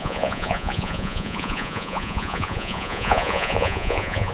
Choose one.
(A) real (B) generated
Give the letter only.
B